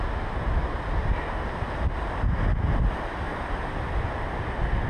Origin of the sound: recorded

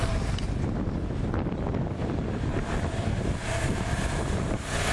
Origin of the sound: recorded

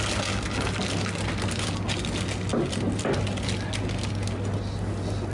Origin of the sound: recorded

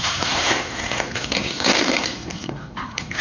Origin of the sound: remade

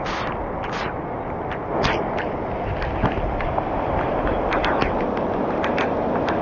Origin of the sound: recorded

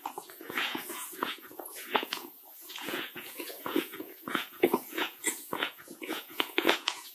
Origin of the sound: remade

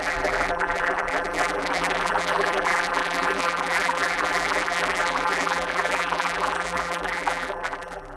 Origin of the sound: remade